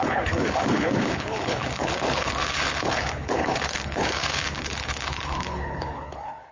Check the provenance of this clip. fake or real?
fake